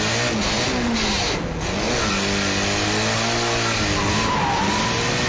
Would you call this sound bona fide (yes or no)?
yes